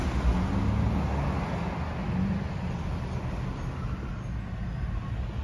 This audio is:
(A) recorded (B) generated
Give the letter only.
A